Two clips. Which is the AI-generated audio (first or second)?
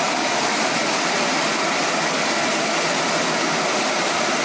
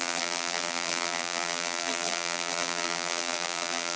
second